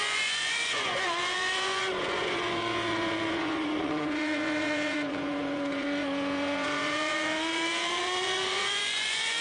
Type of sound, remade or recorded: remade